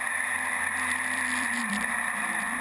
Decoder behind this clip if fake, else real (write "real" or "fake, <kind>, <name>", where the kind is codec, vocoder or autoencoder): fake, vocoder, BigVGAN v2